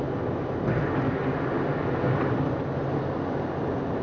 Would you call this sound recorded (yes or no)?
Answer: yes